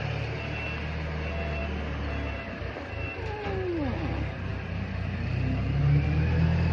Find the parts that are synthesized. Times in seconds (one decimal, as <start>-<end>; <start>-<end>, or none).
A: none